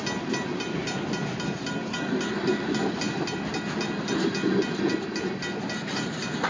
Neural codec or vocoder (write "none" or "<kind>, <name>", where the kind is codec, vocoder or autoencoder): none